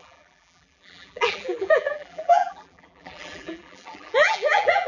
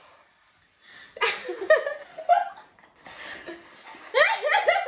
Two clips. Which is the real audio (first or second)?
second